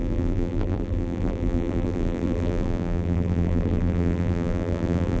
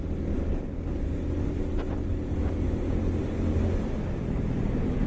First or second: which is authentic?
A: second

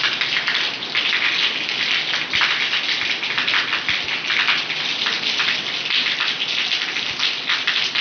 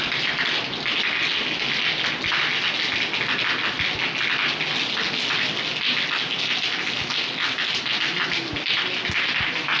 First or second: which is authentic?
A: second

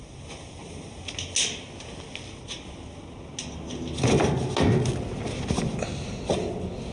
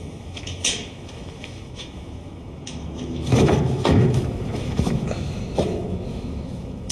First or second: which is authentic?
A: first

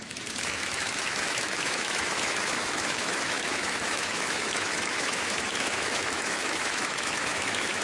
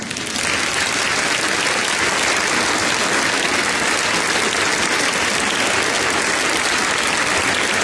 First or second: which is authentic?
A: second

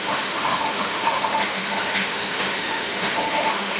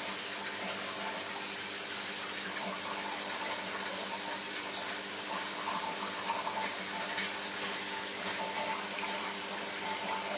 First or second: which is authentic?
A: second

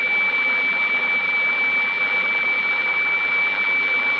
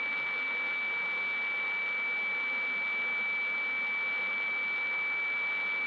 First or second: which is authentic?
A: second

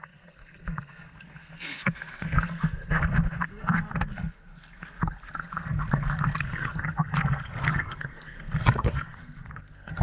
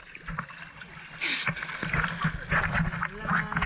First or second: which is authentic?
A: second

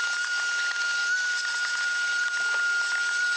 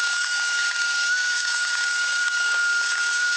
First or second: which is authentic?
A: first